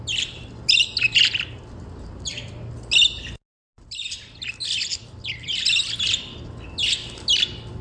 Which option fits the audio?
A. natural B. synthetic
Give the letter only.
A